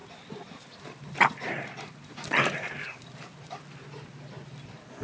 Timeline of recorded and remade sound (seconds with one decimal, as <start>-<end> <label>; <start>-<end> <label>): 0.0-5.0 recorded